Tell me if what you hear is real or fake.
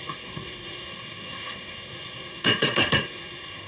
fake